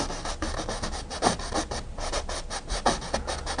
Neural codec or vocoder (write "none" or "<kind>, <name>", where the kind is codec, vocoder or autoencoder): none